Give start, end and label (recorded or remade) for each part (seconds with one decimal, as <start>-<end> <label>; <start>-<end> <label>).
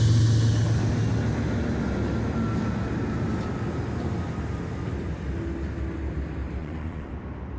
0.0-6.6 recorded; 6.6-7.1 remade; 7.1-7.6 recorded